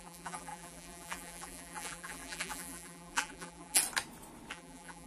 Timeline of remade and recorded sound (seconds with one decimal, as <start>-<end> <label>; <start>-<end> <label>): 0.0-3.8 remade; 3.8-4.5 recorded; 4.5-5.1 remade